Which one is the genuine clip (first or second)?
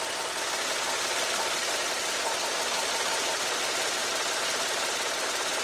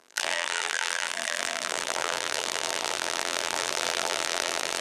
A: first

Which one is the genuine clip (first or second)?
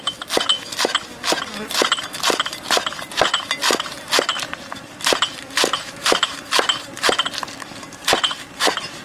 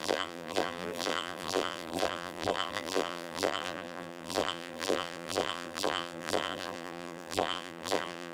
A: first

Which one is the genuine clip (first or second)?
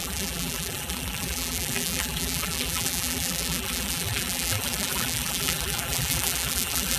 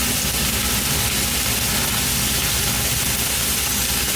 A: second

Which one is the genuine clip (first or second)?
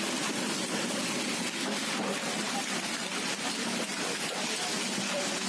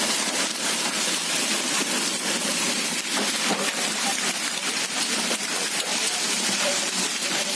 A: first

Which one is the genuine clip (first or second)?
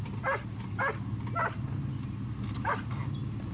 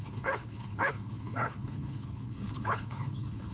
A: first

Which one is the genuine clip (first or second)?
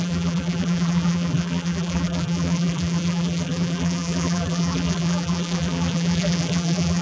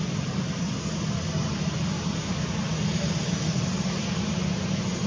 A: second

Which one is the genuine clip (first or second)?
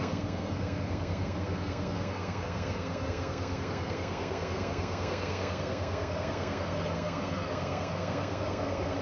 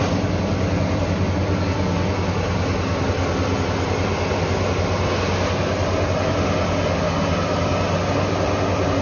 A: second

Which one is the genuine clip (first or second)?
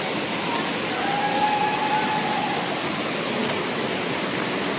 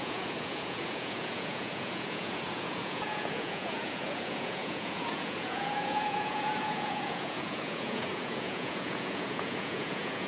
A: first